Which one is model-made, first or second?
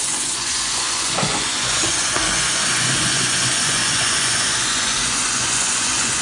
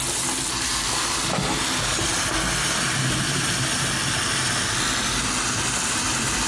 first